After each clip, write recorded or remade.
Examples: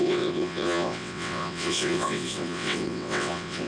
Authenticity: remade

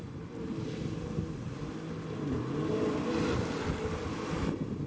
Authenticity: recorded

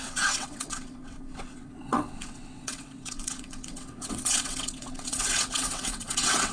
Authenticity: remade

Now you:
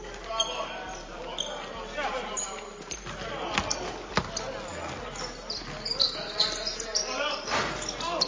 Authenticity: recorded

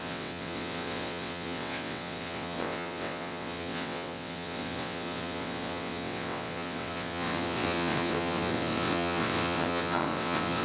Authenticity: remade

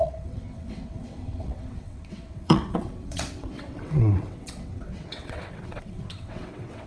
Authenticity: remade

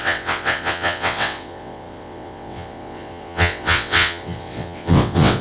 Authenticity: remade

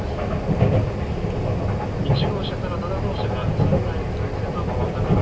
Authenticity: recorded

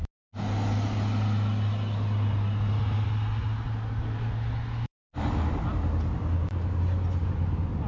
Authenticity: recorded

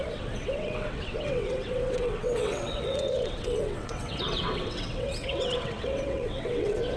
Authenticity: remade